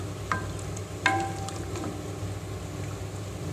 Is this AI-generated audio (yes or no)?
no